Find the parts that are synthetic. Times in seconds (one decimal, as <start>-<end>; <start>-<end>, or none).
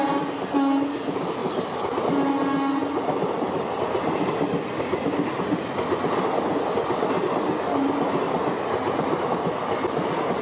1.4-2.0